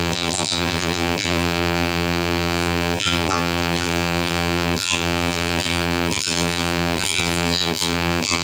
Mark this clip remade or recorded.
remade